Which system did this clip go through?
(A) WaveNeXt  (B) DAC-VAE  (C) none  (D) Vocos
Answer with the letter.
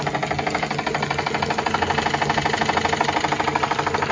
C